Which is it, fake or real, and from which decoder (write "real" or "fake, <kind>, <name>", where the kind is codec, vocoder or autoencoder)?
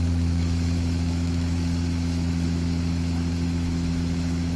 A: fake, autoencoder, DAC-VAE